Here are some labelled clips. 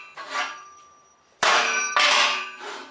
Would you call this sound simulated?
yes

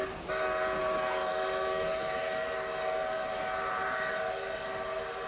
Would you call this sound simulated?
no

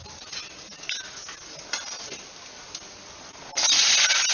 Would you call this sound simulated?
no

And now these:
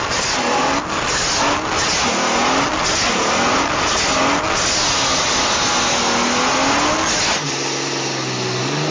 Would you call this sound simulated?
no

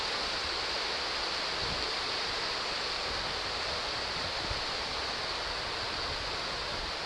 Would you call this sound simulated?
no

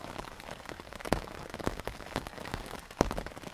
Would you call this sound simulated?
yes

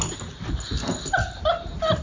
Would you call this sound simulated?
no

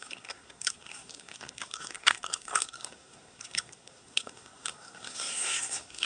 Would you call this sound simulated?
yes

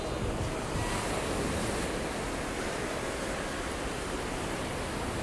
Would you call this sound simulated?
no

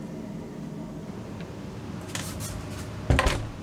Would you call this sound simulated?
no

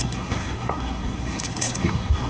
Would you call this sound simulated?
yes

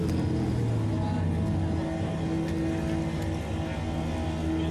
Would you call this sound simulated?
no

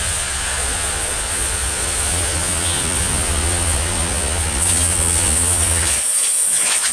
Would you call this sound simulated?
yes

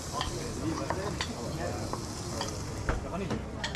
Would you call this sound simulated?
no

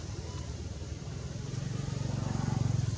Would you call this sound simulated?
no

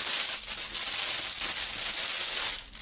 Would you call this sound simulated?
no